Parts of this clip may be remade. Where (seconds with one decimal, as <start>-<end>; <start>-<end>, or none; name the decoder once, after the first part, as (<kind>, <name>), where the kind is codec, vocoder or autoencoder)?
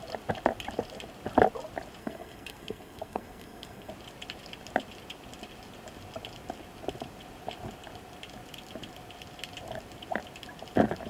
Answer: 2.0-3.9 (codec, SNAC)